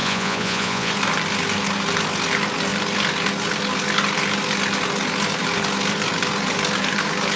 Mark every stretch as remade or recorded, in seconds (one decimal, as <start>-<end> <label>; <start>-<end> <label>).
0.0-0.9 remade; 0.9-7.4 recorded